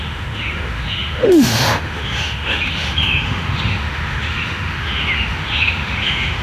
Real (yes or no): no